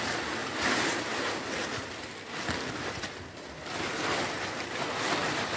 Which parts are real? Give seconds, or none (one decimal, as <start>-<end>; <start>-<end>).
0.0-5.6